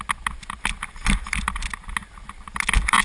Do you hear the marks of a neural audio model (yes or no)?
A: no